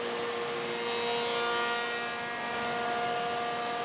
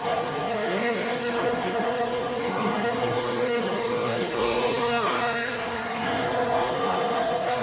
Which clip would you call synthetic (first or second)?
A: second